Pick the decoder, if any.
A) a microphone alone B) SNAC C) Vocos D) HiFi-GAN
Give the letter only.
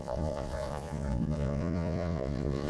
C